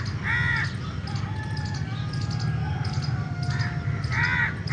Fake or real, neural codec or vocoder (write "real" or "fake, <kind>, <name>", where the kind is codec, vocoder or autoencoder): real